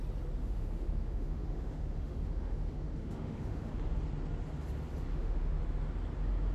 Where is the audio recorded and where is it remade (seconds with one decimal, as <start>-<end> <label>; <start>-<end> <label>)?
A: 0.0-0.4 recorded; 0.4-3.7 remade; 3.7-5.1 recorded; 5.1-5.6 remade; 5.6-6.5 recorded